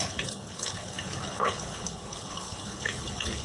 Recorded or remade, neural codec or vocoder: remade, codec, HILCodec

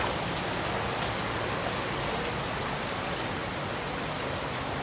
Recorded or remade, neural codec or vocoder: recorded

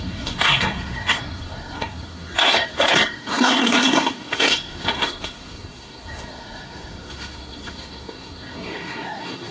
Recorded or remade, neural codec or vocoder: remade, codec, SNAC